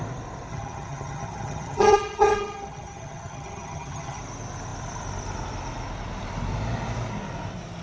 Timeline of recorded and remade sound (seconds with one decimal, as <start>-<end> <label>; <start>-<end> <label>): 0.0-0.5 recorded; 0.5-4.2 remade; 4.2-7.8 recorded